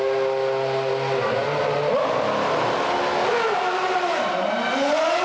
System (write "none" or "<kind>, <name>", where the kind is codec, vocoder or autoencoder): none